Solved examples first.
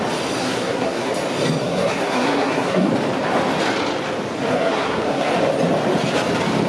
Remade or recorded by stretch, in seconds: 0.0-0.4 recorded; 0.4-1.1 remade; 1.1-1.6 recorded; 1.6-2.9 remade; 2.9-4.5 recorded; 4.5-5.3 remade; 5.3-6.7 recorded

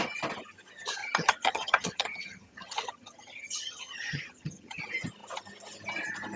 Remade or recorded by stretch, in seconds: 0.0-1.0 recorded; 1.0-4.8 remade; 4.8-6.4 recorded

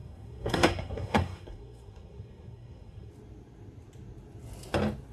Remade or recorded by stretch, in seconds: 0.0-3.1 remade; 3.1-5.1 recorded

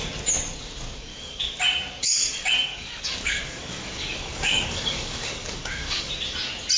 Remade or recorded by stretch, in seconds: 0.0-1.1 recorded; 1.1-1.6 remade; 1.6-2.0 recorded; 2.0-6.1 remade; 6.1-6.8 recorded

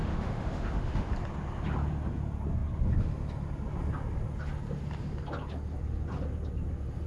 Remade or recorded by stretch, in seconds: 0.0-1.1 remade; 1.1-7.1 recorded

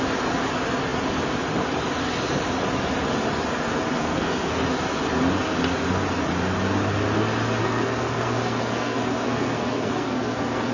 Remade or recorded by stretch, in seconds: 0.0-4.0 recorded; 4.0-4.6 remade; 4.6-7.6 recorded; 7.6-10.7 remade

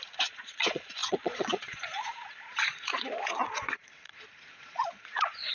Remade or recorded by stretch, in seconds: 0.0-5.5 remade